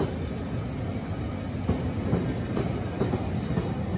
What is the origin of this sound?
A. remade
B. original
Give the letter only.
B